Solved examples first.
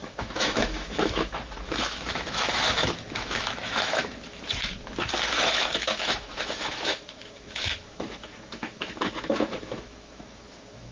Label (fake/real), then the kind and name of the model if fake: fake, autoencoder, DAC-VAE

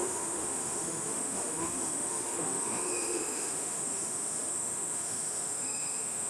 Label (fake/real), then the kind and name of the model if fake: fake, autoencoder, DAC-VAE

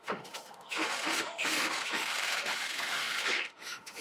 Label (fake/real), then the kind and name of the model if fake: fake, autoencoder, DAC-VAE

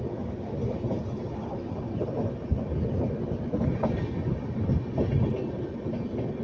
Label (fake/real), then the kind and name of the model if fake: real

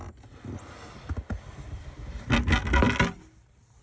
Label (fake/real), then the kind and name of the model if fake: real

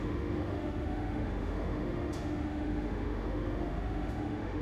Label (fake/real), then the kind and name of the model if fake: fake, autoencoder, DAC-VAE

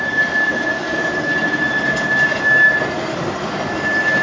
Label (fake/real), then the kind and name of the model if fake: real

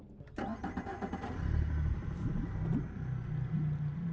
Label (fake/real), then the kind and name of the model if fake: real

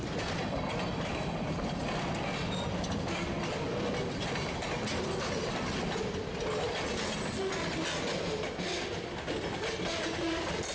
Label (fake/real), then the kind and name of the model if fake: real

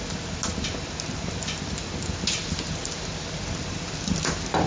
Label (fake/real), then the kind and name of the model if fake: real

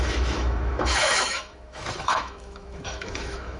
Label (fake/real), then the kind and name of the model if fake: fake, autoencoder, DAC-VAE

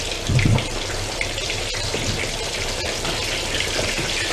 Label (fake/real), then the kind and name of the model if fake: real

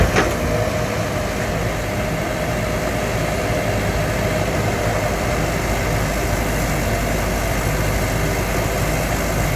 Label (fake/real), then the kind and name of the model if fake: real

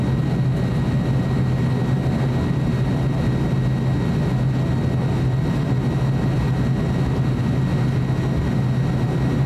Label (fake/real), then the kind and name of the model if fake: real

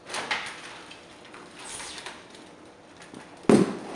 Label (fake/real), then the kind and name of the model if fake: real